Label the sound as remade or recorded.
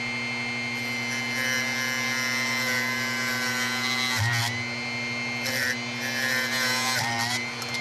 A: recorded